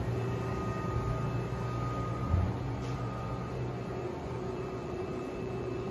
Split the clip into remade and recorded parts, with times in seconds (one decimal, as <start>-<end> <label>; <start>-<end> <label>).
0.0-2.1 recorded; 2.1-5.9 remade